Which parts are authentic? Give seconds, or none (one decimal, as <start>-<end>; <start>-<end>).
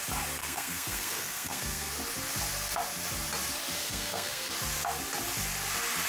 0.0-0.4; 1.9-3.8; 4.5-6.1